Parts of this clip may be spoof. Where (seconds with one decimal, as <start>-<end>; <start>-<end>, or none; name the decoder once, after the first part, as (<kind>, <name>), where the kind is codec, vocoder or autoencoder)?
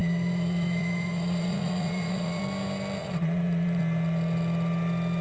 0.0-2.4 (vocoder, Vocos); 3.0-3.8